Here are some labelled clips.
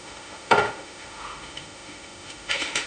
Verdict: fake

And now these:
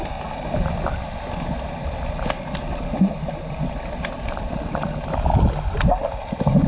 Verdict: real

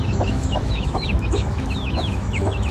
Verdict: fake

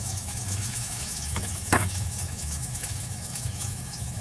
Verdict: fake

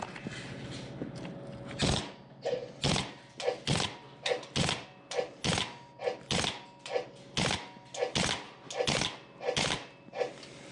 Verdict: real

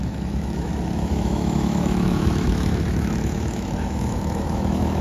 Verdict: fake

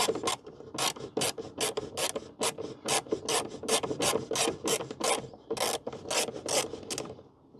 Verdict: real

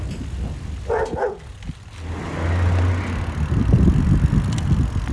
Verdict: real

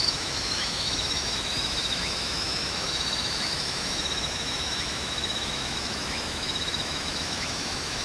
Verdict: fake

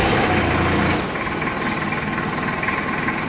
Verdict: real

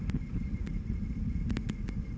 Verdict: real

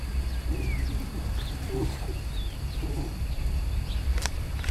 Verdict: real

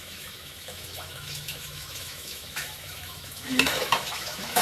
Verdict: fake